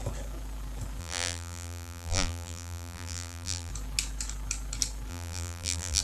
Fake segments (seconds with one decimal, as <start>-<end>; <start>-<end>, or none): 1.0-3.7; 5.1-6.0